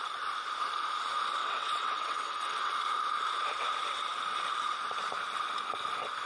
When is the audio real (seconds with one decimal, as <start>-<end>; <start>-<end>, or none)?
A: 0.0-1.4; 2.7-6.3